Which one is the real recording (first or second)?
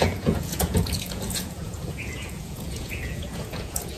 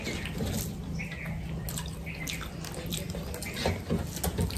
second